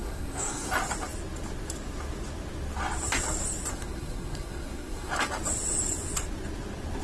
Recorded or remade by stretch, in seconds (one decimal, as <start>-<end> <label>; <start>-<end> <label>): 0.0-0.7 remade; 0.7-3.7 recorded; 3.7-5.1 remade; 5.1-7.0 recorded